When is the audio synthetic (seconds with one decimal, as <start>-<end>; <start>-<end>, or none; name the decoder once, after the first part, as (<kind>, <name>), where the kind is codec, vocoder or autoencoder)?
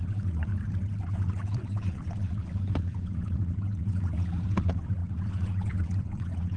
0.0-0.5 (vocoder, WaveNeXt); 1.1-6.6